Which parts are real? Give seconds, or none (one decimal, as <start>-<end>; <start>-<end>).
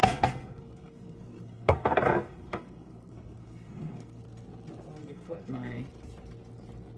4.2-5.0; 5.8-7.0